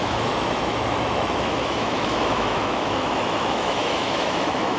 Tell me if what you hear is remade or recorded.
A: remade